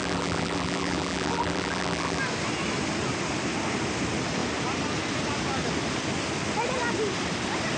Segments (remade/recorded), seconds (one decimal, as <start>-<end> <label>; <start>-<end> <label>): 0.0-2.2 remade; 2.2-7.8 recorded